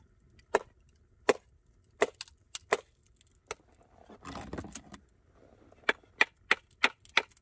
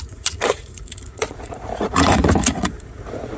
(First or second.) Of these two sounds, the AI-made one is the second